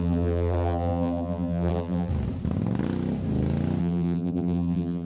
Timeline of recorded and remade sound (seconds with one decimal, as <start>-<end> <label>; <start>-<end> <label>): 0.0-2.1 remade; 2.1-3.8 recorded; 3.8-5.0 remade